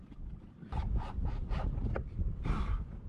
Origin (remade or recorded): recorded